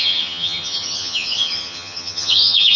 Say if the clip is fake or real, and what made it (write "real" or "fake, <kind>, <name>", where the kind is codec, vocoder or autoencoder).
fake, vocoder, HiFi-GAN